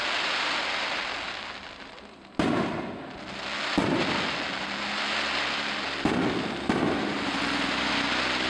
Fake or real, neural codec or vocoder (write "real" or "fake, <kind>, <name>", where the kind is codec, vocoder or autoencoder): real